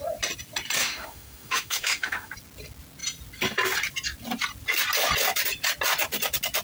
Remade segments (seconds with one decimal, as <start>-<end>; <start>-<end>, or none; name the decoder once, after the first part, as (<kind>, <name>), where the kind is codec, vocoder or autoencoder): 0.8-2.3 (autoencoder, DAC-VAE)